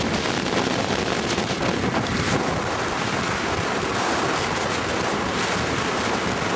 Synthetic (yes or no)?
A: no